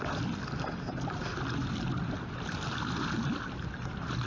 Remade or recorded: recorded